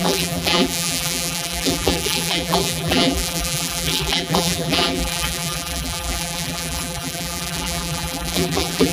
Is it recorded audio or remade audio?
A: remade